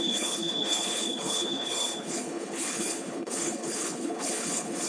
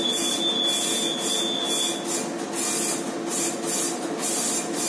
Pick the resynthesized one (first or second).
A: first